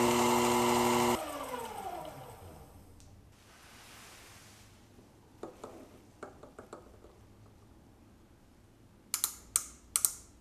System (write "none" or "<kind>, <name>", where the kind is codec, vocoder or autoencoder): none